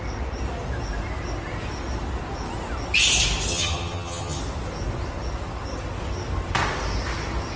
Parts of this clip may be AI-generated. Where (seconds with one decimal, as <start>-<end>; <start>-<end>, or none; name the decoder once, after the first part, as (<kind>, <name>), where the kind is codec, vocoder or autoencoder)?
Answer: 3.5-4.4 (vocoder, HiFi-GAN)